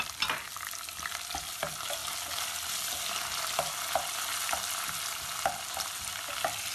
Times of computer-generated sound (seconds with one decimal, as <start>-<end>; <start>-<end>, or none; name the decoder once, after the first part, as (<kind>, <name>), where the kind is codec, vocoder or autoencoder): none